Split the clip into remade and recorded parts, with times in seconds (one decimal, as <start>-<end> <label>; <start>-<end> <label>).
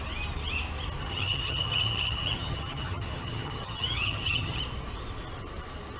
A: 0.0-1.0 recorded; 1.0-4.6 remade; 4.6-6.0 recorded